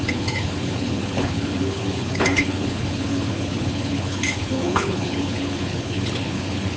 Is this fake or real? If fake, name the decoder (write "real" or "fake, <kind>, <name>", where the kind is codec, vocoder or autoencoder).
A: fake, codec, HILCodec